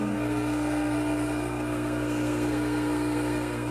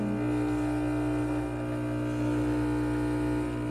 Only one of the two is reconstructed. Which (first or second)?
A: first